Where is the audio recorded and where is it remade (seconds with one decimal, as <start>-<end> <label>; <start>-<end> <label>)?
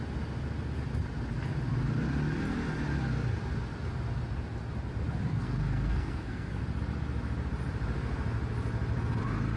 0.0-5.3 recorded; 5.3-6.6 remade; 6.6-9.6 recorded